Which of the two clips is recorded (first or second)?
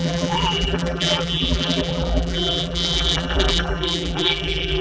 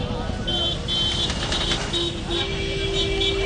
second